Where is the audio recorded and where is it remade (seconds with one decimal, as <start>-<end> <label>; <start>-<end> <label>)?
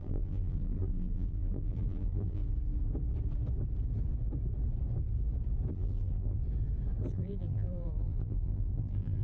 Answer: 0.0-2.4 remade; 2.4-5.7 recorded; 5.7-6.4 remade; 6.4-7.1 recorded; 7.1-9.2 remade